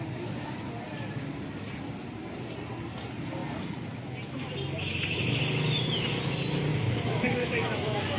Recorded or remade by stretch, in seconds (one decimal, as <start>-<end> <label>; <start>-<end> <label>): 0.0-6.7 recorded; 6.7-8.2 remade